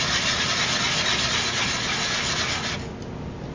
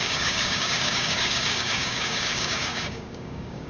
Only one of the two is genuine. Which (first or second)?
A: first